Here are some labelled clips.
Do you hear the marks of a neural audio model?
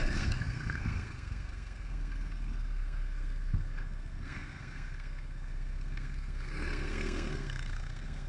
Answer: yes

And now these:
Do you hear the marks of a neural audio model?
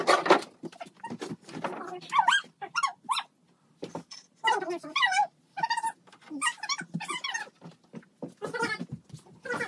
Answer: no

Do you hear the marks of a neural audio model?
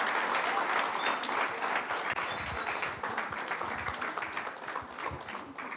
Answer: no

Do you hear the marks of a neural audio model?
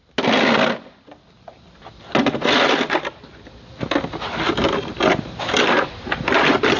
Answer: no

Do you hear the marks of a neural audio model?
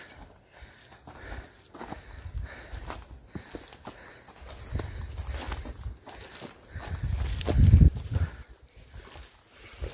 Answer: no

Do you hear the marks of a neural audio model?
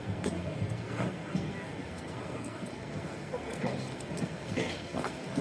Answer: yes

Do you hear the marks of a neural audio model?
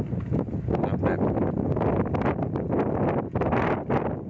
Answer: no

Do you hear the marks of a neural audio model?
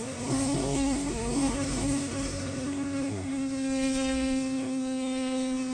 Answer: yes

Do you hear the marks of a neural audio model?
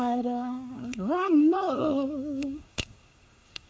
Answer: yes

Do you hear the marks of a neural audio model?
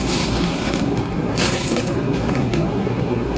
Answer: yes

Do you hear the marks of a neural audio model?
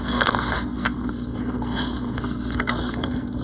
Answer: yes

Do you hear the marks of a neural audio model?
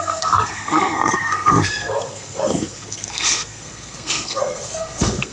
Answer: yes